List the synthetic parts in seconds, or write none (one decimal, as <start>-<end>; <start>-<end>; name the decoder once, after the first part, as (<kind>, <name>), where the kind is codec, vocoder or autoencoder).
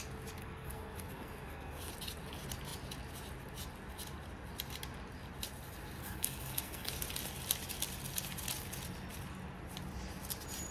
0.4-1.9 (codec, SNAC); 6.0-6.9